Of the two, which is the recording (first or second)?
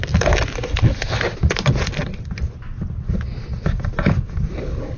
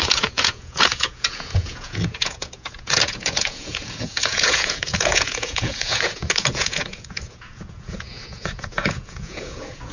first